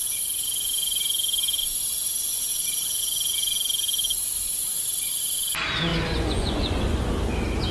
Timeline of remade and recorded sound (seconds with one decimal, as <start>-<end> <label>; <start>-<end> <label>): 0.0-1.6 recorded; 1.6-2.5 remade; 2.5-5.9 recorded; 5.9-7.1 remade; 7.1-7.7 recorded